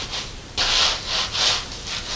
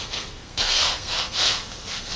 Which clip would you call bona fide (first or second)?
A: first